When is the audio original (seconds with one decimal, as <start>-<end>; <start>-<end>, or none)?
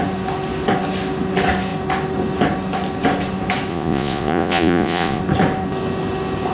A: 0.0-3.7; 5.2-6.5